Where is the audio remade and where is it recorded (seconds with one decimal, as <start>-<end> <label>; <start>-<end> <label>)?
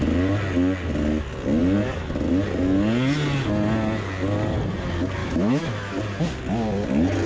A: 0.0-5.2 recorded; 5.2-6.0 remade; 6.0-7.3 recorded